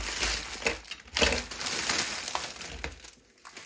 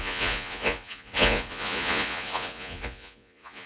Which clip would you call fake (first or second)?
second